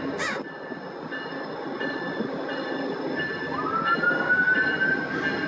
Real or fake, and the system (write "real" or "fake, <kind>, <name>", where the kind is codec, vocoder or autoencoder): real